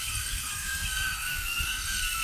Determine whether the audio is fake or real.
fake